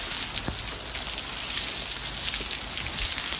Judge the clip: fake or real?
real